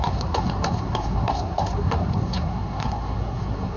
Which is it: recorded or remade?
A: remade